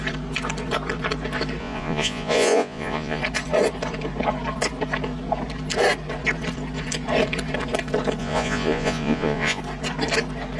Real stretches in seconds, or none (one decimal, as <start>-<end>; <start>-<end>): 0.0-1.6; 3.2-8.2; 9.6-10.6